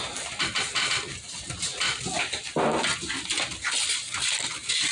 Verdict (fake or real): real